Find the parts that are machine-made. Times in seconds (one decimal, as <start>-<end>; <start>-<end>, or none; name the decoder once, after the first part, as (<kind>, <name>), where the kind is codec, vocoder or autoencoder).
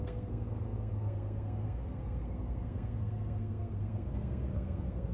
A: 0.0-5.1 (codec, SNAC)